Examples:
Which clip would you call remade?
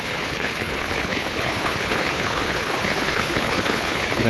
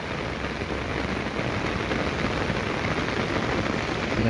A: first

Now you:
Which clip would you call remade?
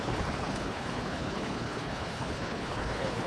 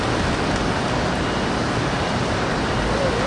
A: first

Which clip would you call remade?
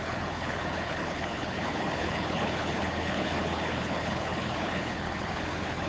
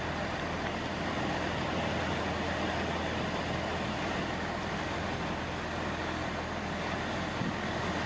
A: first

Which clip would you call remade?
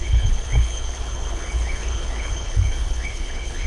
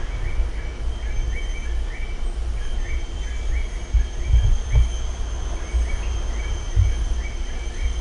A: first